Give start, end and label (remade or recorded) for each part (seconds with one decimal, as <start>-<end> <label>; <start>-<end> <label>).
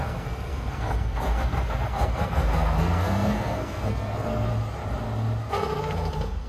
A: 0.0-4.5 remade; 4.5-5.5 recorded; 5.5-6.5 remade